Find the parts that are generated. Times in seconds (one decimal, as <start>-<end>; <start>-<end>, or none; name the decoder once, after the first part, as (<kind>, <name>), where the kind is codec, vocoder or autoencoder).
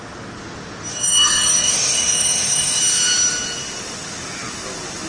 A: 0.9-2.8 (autoencoder, DAC-VAE)